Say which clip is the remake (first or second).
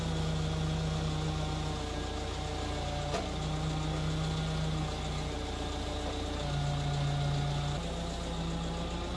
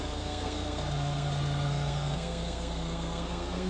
second